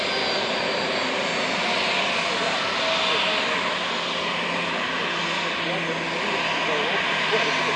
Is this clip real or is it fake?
real